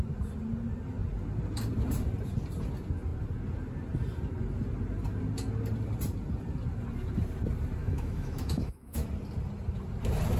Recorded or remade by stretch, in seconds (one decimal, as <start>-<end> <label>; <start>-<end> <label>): 0.0-7.8 recorded; 7.8-9.1 remade; 9.1-10.4 recorded